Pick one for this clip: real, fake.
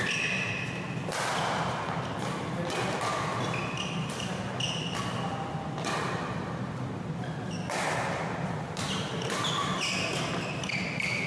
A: real